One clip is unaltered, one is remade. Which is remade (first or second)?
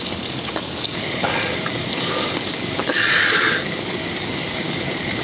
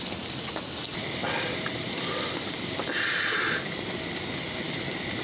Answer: first